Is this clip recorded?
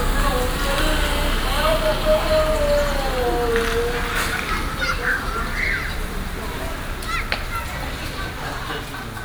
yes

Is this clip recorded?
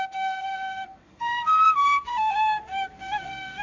no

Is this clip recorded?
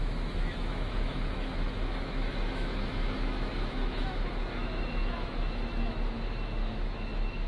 no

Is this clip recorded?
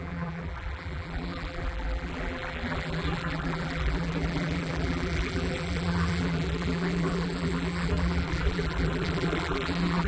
no